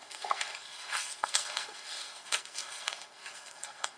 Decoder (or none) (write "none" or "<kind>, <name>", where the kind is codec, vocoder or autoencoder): codec, SNAC